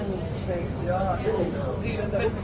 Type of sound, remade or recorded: recorded